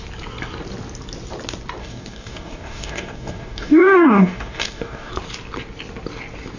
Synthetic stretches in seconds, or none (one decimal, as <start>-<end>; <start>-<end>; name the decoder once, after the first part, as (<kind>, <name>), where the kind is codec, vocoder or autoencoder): 1.8-5.1 (codec, DAC)